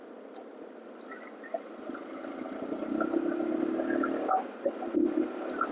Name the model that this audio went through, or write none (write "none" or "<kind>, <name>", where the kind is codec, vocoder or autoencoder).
none